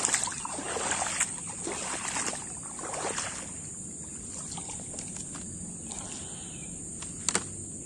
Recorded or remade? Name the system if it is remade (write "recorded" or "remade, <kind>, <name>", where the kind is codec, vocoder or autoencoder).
recorded